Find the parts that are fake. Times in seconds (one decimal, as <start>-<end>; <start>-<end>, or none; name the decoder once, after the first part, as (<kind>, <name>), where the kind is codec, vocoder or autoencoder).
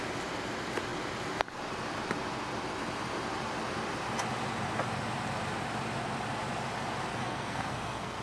7.1-8.2 (codec, SNAC)